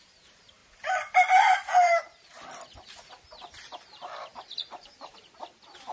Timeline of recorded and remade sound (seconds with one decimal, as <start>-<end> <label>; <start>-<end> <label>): 0.0-0.6 recorded; 0.6-2.0 remade; 2.0-5.9 recorded